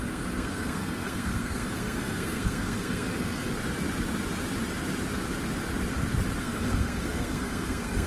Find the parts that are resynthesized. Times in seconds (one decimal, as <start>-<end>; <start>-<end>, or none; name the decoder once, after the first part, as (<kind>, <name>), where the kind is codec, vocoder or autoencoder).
0.0-3.5 (codec, SNAC); 6.4-8.1